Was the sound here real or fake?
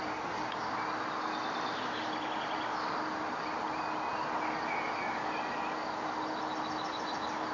fake